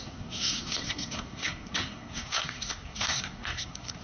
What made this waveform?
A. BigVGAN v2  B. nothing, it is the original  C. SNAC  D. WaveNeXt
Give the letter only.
C